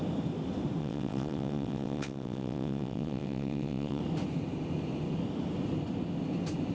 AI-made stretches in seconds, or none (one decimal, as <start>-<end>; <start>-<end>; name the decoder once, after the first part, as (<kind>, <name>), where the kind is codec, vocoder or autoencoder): 0.8-4.0 (vocoder, WaveNeXt)

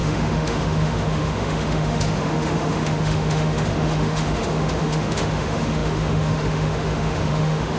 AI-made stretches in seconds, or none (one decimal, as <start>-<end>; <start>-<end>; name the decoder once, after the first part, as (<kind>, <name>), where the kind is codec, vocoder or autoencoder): 0.0-7.8 (autoencoder, DAC-VAE)

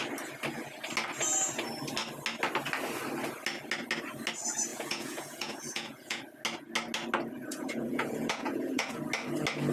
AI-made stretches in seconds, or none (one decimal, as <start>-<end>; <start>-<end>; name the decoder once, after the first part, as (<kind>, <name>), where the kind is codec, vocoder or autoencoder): 4.7-6.2 (vocoder, Vocos); 7.5-9.0

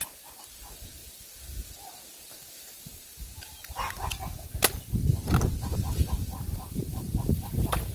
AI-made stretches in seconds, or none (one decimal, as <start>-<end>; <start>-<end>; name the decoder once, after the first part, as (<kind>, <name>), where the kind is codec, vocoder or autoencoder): 0.0-4.1 (vocoder, BigVGAN v2); 5.6-7.9